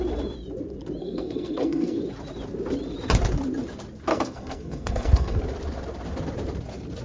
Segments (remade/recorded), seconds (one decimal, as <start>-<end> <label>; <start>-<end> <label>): 0.0-1.0 recorded; 1.0-2.0 remade; 2.0-4.1 recorded; 4.1-5.4 remade; 5.4-7.0 recorded